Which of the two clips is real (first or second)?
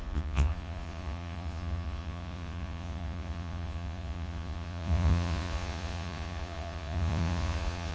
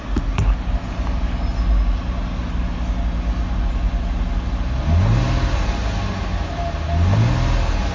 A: second